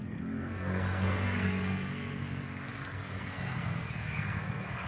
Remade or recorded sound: remade